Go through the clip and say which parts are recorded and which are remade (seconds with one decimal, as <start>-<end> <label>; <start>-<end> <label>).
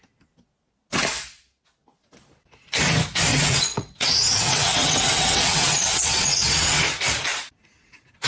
0.0-3.3 recorded; 3.3-6.8 remade; 6.8-8.3 recorded